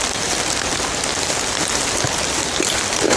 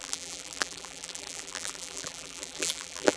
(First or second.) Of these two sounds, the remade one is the second